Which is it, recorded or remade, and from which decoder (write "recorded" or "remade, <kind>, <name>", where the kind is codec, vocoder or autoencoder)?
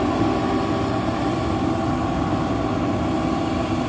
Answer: recorded